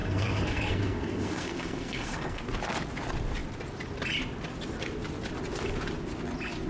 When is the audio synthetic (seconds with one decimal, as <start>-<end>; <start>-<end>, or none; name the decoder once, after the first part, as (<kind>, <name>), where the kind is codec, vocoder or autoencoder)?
0.0-2.4 (codec, SNAC)